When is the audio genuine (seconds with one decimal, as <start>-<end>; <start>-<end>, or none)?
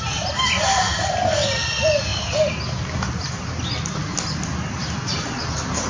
0.0-5.9